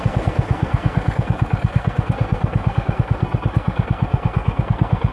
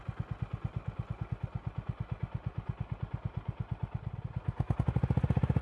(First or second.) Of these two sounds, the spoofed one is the first